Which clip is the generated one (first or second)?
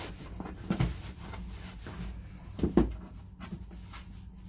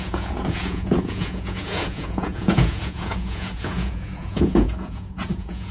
second